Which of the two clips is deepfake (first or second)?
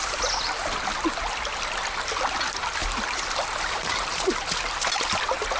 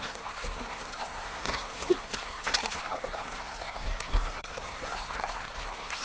second